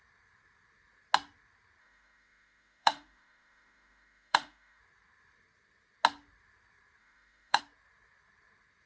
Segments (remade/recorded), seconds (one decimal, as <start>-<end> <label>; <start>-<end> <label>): 0.0-1.8 recorded; 1.8-4.8 remade; 4.8-7.0 recorded; 7.0-7.6 remade; 7.6-8.9 recorded